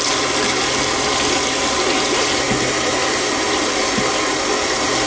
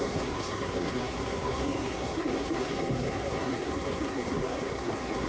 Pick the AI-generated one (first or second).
second